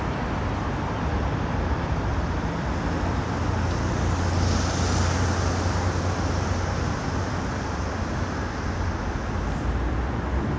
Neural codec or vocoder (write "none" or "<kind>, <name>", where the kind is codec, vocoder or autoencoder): none